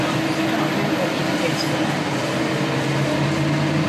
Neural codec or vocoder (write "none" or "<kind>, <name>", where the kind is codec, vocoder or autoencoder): none